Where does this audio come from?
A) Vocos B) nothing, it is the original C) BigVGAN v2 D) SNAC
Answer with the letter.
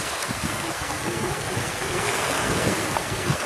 D